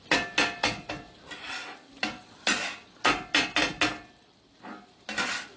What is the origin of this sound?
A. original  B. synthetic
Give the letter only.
A